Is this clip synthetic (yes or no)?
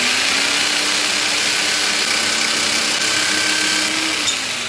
no